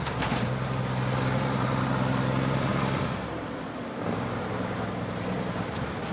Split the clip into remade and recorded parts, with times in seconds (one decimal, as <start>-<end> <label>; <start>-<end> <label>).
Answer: 0.0-6.1 remade